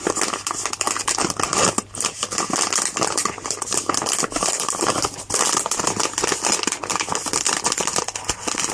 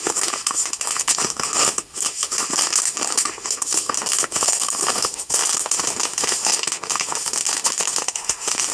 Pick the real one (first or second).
first